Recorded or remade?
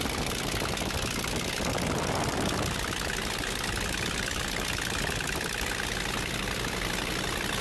recorded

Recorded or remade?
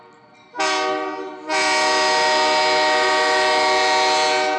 recorded